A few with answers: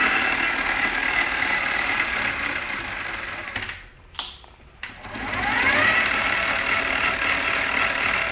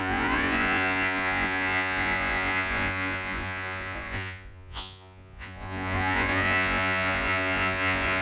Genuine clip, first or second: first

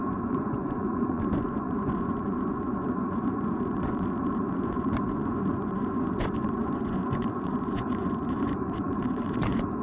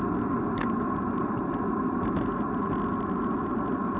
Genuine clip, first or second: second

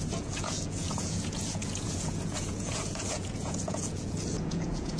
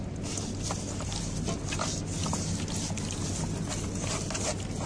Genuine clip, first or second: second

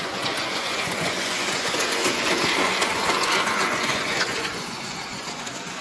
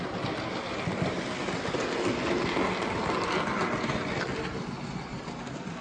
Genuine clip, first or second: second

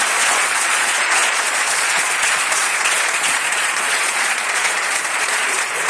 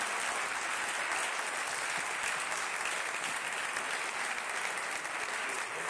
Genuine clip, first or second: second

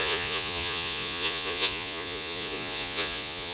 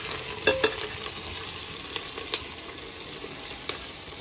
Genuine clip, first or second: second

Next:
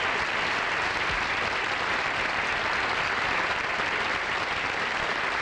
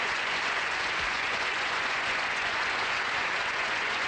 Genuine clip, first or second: first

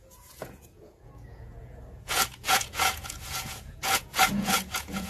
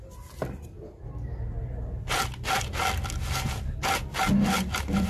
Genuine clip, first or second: second